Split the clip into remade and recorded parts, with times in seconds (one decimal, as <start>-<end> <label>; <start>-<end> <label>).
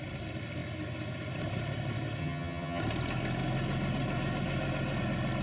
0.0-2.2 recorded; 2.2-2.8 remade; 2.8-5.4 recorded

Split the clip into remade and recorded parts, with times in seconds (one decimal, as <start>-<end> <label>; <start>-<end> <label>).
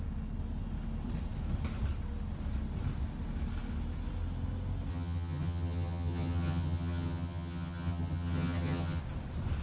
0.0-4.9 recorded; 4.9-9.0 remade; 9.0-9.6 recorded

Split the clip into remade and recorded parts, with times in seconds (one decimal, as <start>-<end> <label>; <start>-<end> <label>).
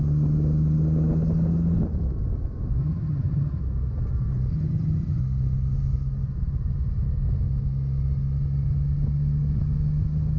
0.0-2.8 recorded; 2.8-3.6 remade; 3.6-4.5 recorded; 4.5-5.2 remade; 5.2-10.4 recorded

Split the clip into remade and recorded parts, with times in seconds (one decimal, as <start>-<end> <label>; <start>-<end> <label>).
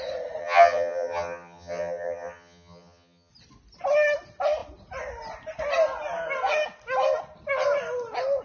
0.0-0.4 recorded; 0.4-3.3 remade; 3.3-8.4 recorded